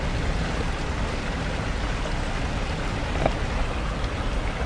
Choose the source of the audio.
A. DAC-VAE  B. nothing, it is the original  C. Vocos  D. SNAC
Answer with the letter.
B